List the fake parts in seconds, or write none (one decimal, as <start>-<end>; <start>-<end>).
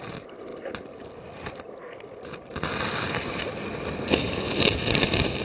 0.0-0.5; 1.5-5.4